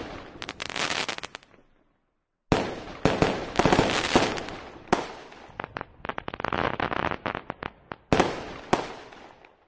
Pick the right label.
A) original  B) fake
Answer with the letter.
A